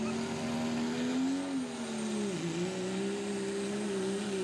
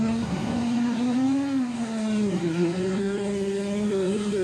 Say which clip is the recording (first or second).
first